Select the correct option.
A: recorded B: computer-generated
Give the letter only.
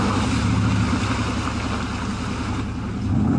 A